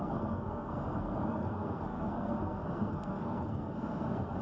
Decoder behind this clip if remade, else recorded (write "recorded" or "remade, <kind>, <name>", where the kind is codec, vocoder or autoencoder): remade, codec, SNAC